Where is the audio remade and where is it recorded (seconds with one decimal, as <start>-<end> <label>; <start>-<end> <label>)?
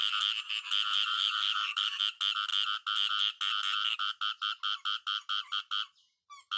0.0-1.1 recorded; 1.1-2.0 remade; 2.0-6.6 recorded